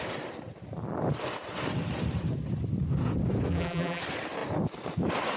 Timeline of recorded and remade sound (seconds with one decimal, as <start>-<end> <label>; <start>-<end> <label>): 0.0-3.5 recorded; 3.5-4.0 remade; 4.0-5.4 recorded